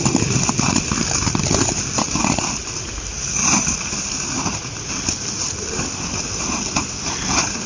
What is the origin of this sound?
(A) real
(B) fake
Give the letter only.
A